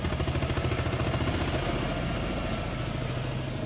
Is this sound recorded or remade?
recorded